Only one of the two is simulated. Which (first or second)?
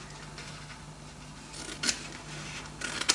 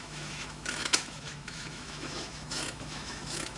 second